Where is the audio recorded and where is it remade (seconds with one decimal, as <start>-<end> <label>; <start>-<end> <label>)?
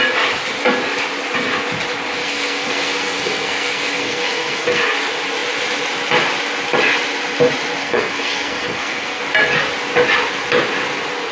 0.0-2.2 recorded; 2.2-4.8 remade; 4.8-7.8 recorded; 7.8-9.2 remade; 9.2-11.3 recorded